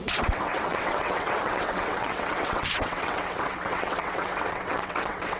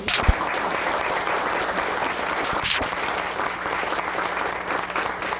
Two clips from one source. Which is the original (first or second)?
second